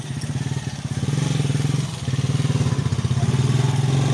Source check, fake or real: real